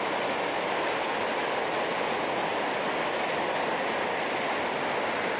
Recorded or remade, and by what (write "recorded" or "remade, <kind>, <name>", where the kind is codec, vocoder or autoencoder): recorded